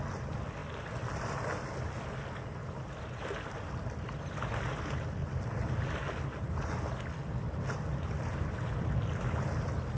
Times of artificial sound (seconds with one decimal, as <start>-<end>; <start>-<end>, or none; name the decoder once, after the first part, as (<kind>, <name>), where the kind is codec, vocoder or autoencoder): 0.6-1.9 (vocoder, BigVGAN v2)